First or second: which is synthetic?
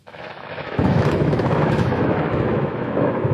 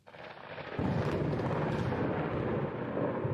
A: first